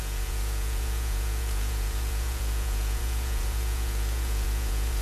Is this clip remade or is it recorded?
remade